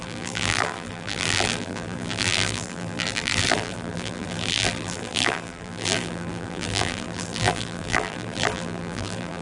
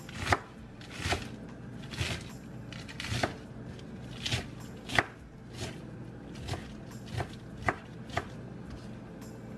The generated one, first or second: first